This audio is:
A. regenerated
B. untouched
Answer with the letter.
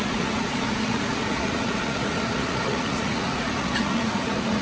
A